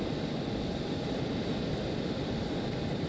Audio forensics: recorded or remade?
remade